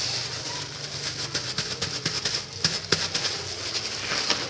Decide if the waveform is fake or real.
real